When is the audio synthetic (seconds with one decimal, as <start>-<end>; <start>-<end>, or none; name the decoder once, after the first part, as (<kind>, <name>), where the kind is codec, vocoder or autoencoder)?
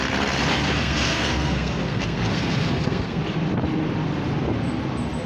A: 0.5-3.2 (codec, SNAC)